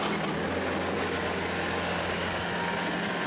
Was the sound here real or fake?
real